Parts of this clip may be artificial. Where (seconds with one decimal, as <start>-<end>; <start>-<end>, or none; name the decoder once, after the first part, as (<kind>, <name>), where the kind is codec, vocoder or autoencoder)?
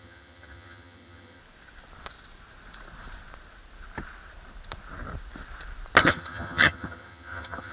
0.0-1.4 (vocoder, HiFi-GAN); 6.0-7.7